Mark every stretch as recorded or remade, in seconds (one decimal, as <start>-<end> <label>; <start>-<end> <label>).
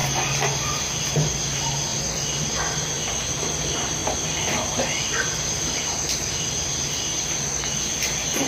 0.0-8.5 recorded